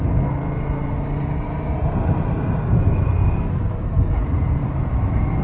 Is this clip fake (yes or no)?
no